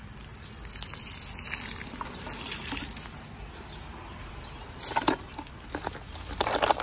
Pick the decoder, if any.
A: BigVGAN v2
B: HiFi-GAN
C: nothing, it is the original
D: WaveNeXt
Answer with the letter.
C